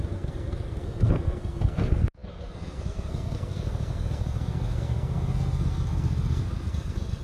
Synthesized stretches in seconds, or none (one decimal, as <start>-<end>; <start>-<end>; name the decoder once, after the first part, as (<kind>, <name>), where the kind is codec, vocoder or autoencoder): 0.0-7.2 (codec, SNAC)